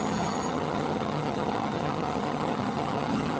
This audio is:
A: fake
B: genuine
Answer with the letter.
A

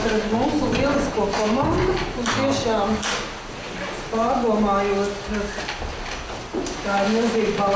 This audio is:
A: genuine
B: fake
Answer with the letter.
A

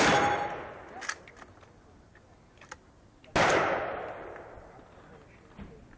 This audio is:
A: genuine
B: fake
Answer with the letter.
A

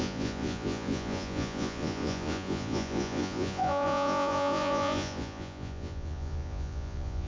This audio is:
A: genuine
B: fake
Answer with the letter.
B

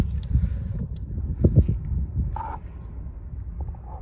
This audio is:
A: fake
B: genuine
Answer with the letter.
B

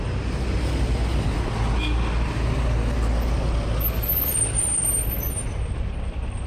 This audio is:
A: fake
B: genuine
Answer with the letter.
B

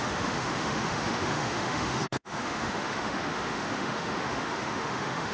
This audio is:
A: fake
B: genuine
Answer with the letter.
A